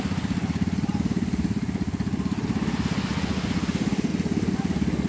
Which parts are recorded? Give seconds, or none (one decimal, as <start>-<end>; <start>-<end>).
0.0-5.1